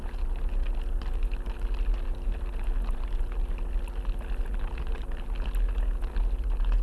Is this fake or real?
real